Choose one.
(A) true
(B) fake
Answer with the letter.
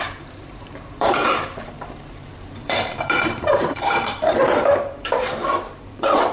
B